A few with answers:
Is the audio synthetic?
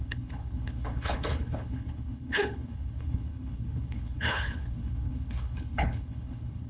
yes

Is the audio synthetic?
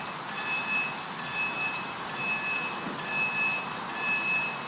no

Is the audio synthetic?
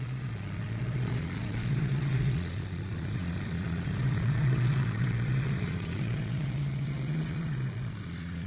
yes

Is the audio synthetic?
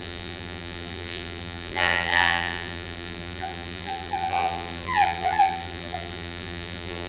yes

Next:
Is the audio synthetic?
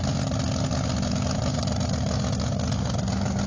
no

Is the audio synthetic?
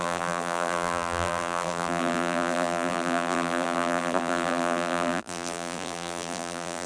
yes